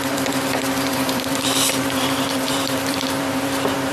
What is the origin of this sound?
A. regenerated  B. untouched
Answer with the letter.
A